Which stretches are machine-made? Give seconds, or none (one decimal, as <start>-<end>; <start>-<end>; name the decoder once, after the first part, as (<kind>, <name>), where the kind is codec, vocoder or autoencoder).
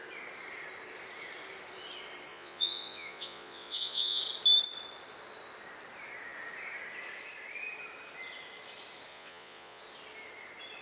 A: 2.3-4.2 (vocoder, Vocos); 9.1-9.8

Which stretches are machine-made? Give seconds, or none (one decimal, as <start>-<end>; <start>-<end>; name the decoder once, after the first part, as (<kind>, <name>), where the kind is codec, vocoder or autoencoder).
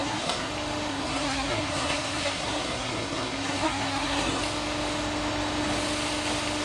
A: 0.0-0.5 (codec, SNAC); 0.9-4.4